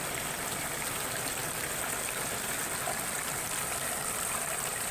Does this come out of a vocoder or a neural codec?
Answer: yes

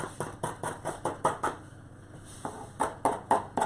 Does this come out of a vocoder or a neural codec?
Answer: no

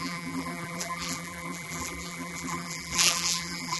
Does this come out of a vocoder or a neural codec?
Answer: yes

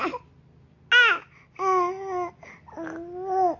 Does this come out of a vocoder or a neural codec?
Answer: no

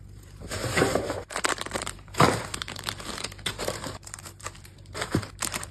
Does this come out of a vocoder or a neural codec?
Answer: yes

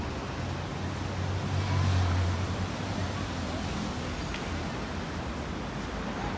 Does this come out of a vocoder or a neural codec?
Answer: no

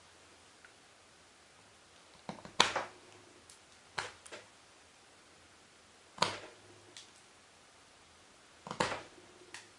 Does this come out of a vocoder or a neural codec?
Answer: no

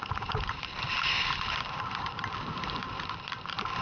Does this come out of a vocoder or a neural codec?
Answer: yes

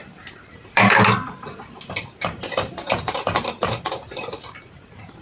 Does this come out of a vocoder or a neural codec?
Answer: yes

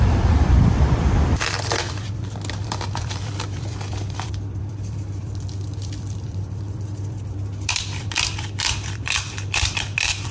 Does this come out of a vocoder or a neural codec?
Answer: yes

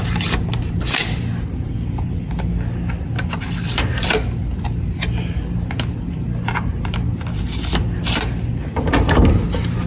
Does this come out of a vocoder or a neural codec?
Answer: no